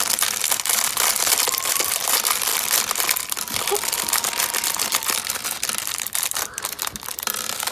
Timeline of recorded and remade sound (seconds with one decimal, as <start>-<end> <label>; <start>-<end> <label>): 0.0-2.5 remade; 2.5-5.8 recorded; 5.8-7.7 remade